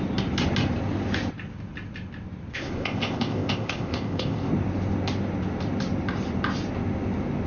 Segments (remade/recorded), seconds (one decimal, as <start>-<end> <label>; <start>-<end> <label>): 0.0-2.5 recorded; 2.5-4.5 remade; 4.5-7.5 recorded